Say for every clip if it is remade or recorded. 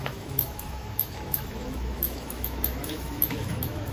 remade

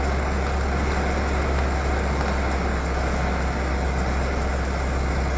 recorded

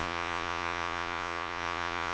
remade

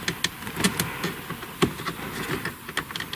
recorded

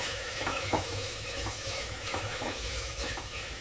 remade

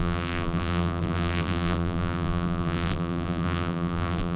remade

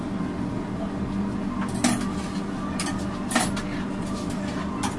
recorded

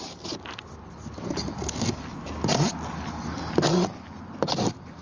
recorded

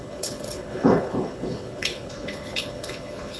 remade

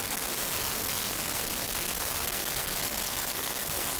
remade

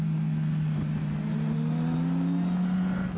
recorded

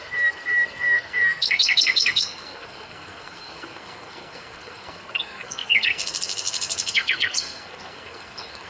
remade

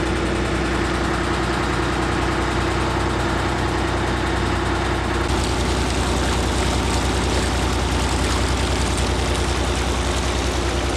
recorded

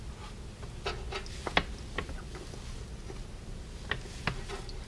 recorded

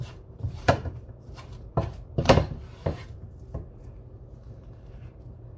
remade